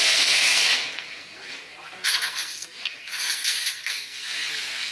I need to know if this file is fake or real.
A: fake